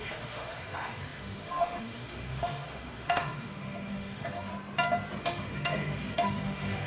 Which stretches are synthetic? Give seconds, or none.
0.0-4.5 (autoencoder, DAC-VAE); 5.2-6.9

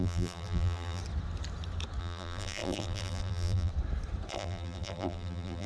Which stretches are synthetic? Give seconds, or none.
0.0-1.0 (vocoder, BigVGAN v2); 2.0-3.7; 4.3-5.7

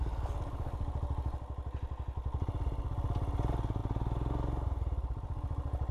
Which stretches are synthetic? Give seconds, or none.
none

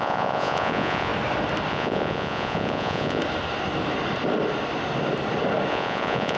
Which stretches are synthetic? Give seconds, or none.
0.0-1.1 (vocoder, Vocos); 1.7-3.2; 5.7-6.4